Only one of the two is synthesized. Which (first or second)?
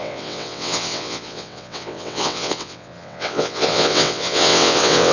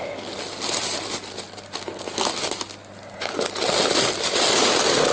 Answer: first